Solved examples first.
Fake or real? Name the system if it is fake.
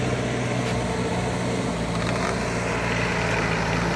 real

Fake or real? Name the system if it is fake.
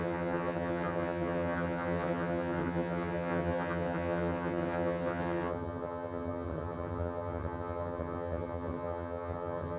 fake, vocoder, HiFi-GAN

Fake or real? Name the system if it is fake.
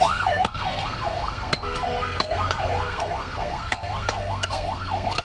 fake, codec, SNAC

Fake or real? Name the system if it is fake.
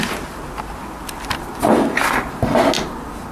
real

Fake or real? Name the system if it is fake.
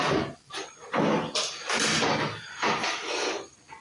real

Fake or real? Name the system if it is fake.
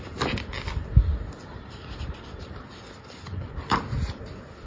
real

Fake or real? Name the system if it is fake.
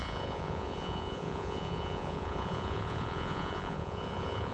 fake, vocoder, Vocos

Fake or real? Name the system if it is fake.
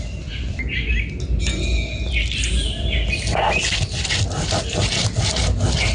real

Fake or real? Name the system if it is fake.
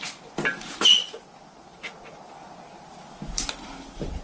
real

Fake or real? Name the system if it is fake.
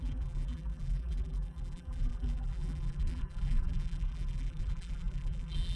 fake, vocoder, BigVGAN v2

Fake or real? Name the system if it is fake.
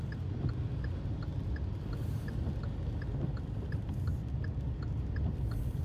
real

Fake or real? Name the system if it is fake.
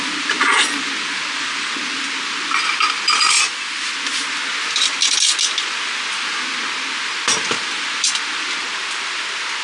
real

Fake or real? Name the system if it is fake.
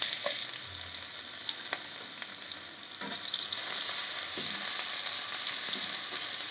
real